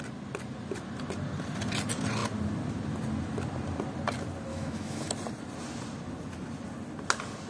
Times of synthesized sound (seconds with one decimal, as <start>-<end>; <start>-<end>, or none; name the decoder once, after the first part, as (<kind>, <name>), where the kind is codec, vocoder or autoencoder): 4.5-5.1 (autoencoder, DAC-VAE)

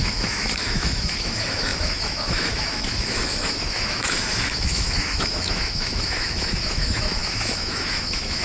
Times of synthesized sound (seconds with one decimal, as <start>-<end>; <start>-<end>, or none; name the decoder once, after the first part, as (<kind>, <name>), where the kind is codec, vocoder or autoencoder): 0.0-8.4 (autoencoder, DAC-VAE)

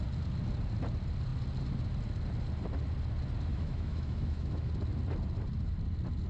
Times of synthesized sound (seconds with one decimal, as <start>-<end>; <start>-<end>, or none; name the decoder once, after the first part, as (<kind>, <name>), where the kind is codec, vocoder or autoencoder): 3.5-4.7 (autoencoder, DAC-VAE)